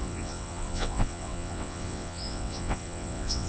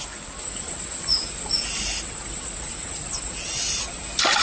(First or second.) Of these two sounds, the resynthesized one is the first